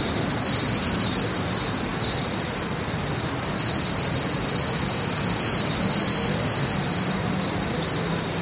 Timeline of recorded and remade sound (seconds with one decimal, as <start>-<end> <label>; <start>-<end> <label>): 0.0-8.4 recorded